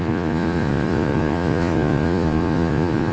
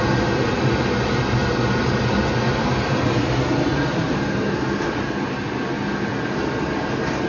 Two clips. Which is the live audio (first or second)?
second